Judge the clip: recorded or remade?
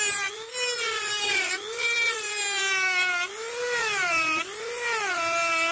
recorded